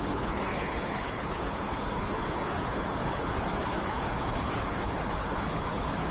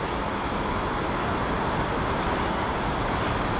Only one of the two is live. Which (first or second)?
second